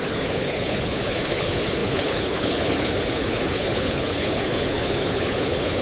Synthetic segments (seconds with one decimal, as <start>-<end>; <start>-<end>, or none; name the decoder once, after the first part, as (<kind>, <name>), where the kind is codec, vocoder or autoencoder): 0.0-5.8 (codec, HILCodec)